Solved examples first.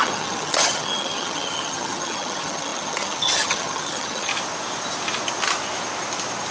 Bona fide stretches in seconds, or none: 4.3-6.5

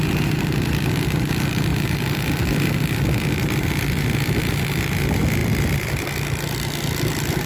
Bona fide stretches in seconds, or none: 0.0-7.5

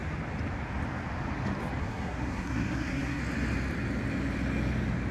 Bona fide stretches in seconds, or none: 0.0-1.8; 3.2-5.1